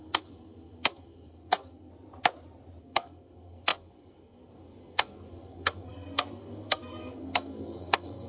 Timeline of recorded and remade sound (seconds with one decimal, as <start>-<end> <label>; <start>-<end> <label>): 0.0-1.9 remade; 1.9-2.8 recorded; 2.8-8.3 remade

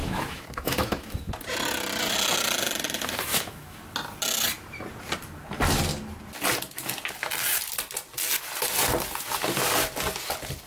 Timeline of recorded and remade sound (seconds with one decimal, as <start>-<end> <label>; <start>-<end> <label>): 0.0-1.3 remade; 1.3-3.3 recorded; 3.3-3.8 remade; 3.8-10.7 recorded

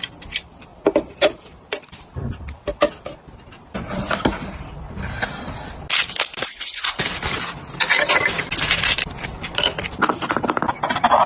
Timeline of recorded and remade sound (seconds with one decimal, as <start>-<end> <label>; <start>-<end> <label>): 0.0-0.7 recorded; 0.7-4.9 remade; 4.9-11.3 recorded

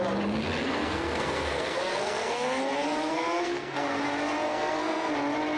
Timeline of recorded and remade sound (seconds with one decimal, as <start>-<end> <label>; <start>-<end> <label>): 0.0-0.6 recorded; 0.6-4.0 remade; 4.0-4.5 recorded; 4.5-5.1 remade; 5.1-5.6 recorded

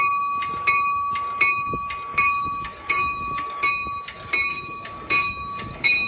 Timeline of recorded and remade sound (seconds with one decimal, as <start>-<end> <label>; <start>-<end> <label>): 0.0-2.1 recorded; 2.1-3.7 remade; 3.7-4.5 recorded; 4.5-6.1 remade